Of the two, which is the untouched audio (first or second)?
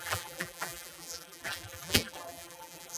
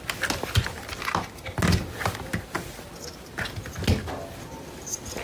second